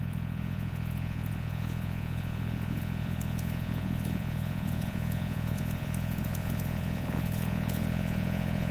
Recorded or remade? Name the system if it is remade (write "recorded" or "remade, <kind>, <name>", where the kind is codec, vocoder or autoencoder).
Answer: remade, vocoder, Vocos